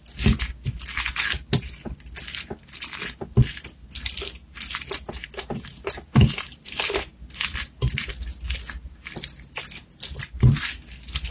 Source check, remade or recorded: recorded